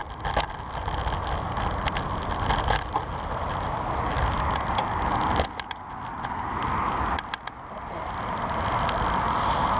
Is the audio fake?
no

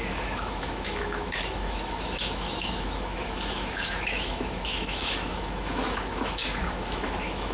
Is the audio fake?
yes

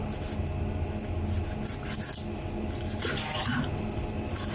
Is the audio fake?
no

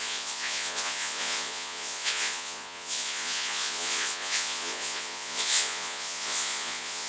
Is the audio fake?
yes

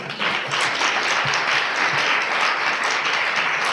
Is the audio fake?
no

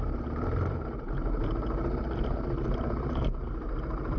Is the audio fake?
yes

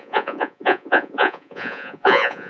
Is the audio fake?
yes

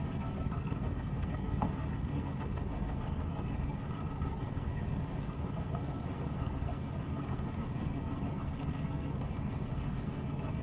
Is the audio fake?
yes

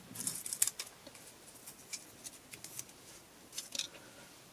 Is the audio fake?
no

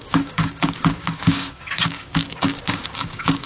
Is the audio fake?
yes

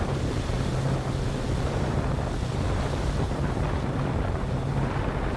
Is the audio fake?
yes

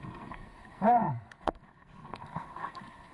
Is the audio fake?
yes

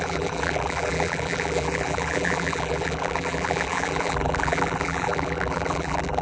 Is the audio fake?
yes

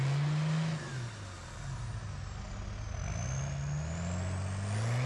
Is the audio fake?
no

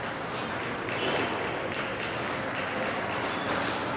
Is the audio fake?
no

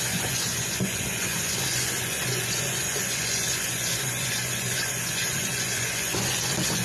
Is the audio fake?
yes